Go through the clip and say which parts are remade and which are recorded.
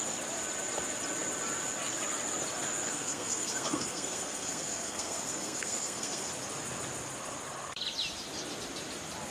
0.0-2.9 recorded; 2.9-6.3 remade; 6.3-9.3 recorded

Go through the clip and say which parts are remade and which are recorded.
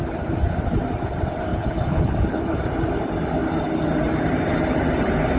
0.0-1.5 recorded; 1.5-2.6 remade; 2.6-5.4 recorded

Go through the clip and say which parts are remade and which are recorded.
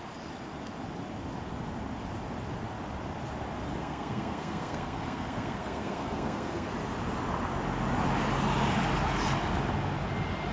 0.0-3.8 recorded; 3.8-6.7 remade; 6.7-10.5 recorded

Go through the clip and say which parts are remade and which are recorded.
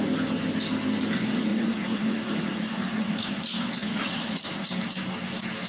0.0-1.5 recorded; 1.5-3.4 remade; 3.4-3.8 recorded; 3.8-4.7 remade; 4.7-5.7 recorded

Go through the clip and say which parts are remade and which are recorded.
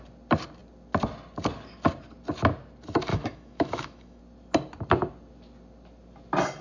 0.0-3.1 recorded; 3.1-4.2 remade; 4.2-6.6 recorded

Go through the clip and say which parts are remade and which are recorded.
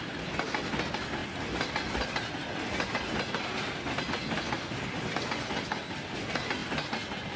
0.0-7.4 recorded